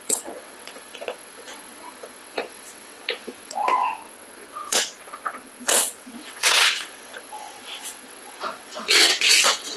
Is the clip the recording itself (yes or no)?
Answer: no